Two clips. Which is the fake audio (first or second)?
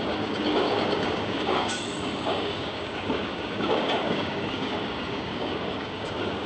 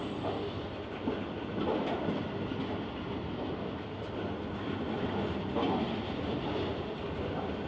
first